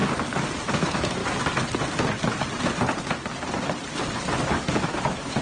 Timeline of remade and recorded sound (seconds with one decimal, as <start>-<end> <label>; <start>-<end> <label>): 0.0-0.7 recorded; 0.7-1.2 remade; 1.2-4.4 recorded; 4.4-5.4 remade